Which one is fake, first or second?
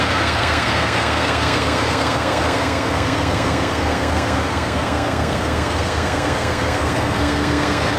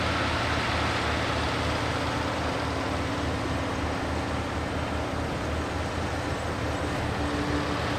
first